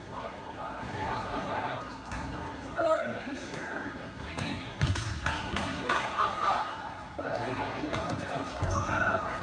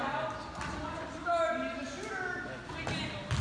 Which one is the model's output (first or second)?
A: first